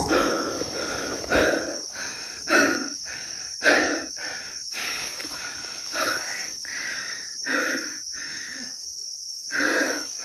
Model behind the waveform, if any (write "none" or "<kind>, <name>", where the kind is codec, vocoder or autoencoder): codec, DAC